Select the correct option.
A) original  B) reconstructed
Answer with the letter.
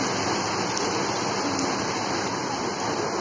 A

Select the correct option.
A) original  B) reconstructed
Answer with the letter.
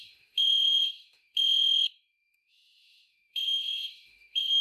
B